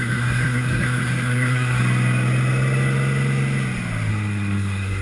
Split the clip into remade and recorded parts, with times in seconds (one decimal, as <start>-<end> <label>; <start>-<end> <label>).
0.0-1.8 remade; 1.8-4.1 recorded; 4.1-5.0 remade